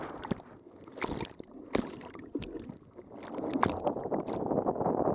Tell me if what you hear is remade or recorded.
recorded